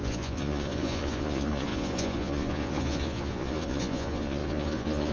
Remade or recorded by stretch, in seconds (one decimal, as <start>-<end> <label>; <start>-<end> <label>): 0.0-5.1 remade